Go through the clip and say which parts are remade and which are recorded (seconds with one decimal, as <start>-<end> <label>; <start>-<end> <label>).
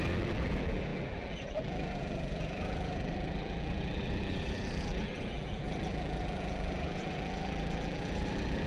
0.0-8.7 remade